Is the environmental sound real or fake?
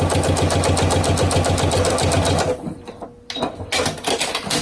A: real